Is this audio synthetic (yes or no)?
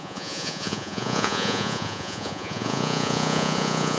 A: yes